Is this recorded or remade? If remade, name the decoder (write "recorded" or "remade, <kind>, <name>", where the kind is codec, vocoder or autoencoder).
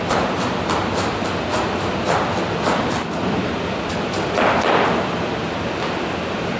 recorded